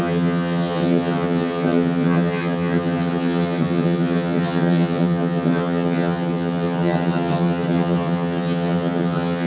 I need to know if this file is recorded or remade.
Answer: remade